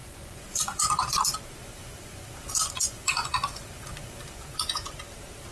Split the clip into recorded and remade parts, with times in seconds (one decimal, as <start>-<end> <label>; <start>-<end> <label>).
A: 0.0-1.0 remade; 1.0-1.6 recorded; 1.6-4.9 remade; 4.9-5.5 recorded